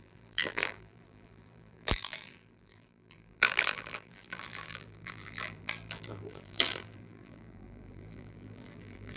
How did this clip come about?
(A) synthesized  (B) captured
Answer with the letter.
A